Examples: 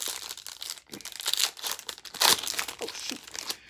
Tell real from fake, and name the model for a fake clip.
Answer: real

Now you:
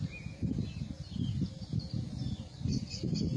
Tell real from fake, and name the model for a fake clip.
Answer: real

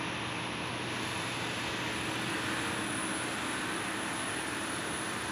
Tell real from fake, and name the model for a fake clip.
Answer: real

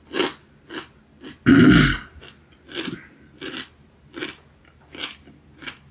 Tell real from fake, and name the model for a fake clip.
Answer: real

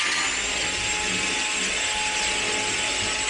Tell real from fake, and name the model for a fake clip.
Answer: real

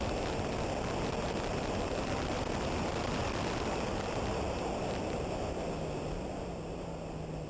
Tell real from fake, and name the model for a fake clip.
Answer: real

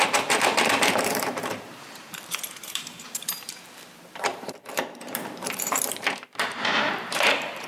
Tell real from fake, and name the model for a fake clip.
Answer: fake, vocoder, BigVGAN v2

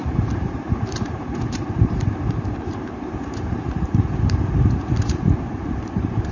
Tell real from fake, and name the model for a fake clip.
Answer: fake, vocoder, BigVGAN v2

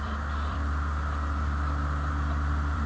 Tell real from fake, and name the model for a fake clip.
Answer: fake, vocoder, BigVGAN v2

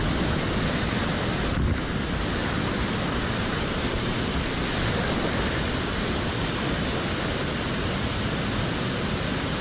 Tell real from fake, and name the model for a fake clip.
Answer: real